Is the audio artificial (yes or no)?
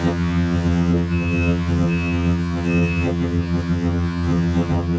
yes